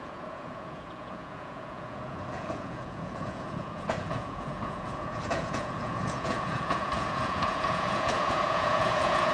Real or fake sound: fake